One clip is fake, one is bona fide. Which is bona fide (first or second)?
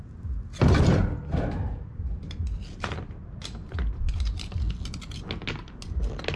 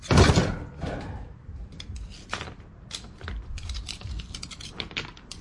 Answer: first